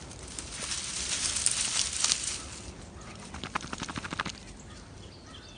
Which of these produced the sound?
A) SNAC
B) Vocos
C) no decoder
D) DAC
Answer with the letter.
C